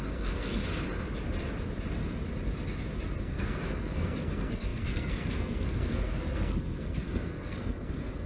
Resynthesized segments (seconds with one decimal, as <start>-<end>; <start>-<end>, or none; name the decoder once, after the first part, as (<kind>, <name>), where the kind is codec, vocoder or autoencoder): 0.0-0.6 (codec, SNAC); 3.2-8.3